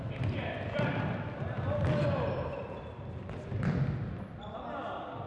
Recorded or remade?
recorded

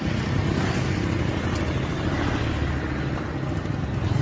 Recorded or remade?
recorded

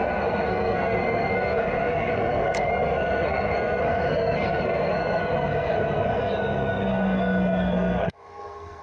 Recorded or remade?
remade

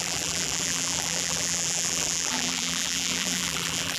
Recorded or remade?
remade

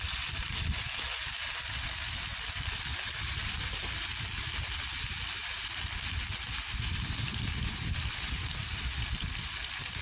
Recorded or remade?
recorded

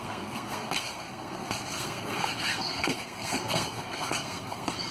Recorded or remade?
remade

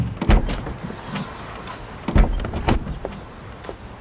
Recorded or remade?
recorded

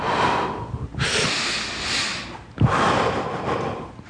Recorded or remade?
recorded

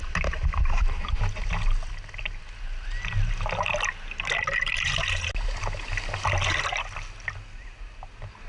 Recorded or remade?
recorded